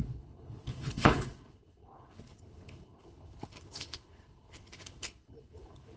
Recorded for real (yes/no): no